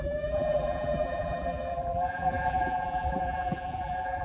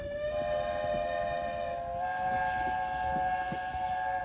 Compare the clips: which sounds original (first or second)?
second